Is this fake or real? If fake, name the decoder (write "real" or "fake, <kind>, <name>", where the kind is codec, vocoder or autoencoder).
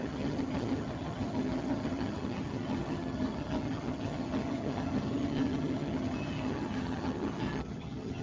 fake, vocoder, HiFi-GAN